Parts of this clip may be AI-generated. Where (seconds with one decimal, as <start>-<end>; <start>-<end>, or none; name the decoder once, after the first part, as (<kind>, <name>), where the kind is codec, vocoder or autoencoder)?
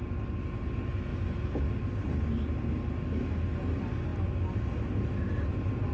1.1-1.6 (vocoder, BigVGAN v2)